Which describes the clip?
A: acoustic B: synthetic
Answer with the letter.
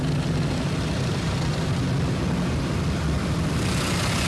A